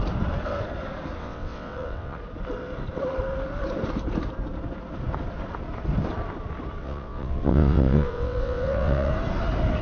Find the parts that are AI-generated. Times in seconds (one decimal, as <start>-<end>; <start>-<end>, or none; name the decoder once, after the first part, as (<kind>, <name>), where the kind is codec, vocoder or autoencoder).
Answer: 1.2-2.2 (vocoder, WaveNeXt); 6.8-9.1